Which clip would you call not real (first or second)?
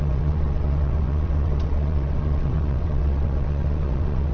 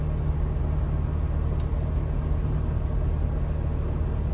first